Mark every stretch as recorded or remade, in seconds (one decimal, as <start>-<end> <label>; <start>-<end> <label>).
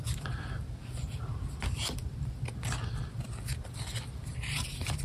0.0-5.0 recorded